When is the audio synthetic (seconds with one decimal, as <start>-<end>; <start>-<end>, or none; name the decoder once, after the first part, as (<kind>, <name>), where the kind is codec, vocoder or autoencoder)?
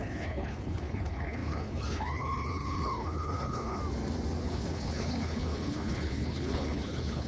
0.0-3.8 (codec, HILCodec); 4.4-7.3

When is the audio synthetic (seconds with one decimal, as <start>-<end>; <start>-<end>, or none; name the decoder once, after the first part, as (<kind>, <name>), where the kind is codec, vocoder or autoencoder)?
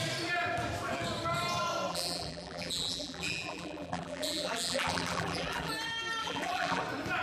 1.9-5.7 (vocoder, BigVGAN v2); 6.2-6.8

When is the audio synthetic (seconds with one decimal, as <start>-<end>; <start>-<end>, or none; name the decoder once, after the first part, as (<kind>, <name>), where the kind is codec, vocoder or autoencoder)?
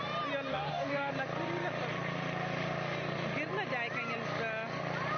0.5-1.1 (codec, DAC)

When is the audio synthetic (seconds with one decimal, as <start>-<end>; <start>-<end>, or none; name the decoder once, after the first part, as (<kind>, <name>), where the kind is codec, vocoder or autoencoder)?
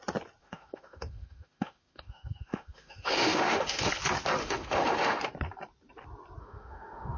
0.4-3.9 (autoencoder, DAC-VAE); 4.4-5.2; 6.4-7.2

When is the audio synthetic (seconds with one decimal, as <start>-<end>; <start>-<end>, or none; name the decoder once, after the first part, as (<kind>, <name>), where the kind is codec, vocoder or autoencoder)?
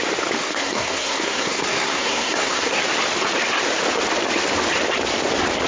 0.4-2.8 (codec, SNAC)